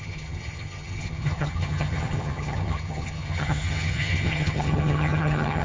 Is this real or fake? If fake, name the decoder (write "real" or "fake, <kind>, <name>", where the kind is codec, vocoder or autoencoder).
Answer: fake, vocoder, HiFi-GAN